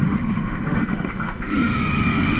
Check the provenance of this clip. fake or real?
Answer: fake